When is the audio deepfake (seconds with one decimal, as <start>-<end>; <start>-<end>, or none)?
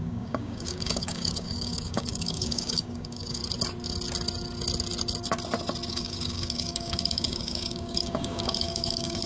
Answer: 0.0-3.4; 5.9-9.3